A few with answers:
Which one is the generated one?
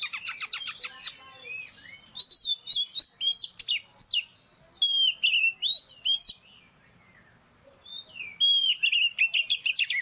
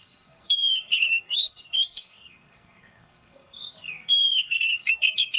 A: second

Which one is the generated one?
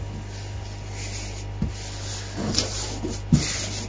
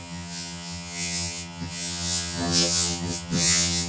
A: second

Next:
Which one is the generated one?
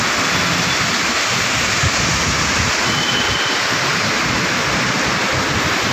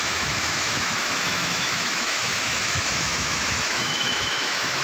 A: second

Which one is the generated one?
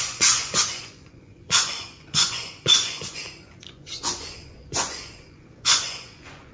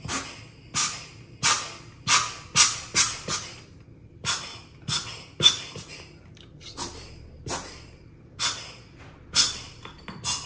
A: first